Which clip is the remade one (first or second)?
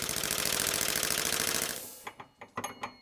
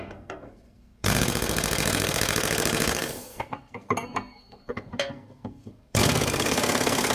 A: second